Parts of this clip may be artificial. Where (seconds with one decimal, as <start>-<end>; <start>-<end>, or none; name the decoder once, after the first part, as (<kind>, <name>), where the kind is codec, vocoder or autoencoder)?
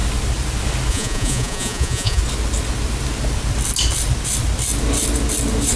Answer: 0.9-2.2 (vocoder, Vocos)